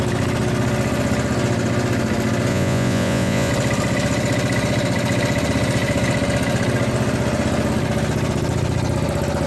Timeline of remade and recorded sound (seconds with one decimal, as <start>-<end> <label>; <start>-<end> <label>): 0.0-2.5 recorded; 2.5-3.5 remade; 3.5-9.5 recorded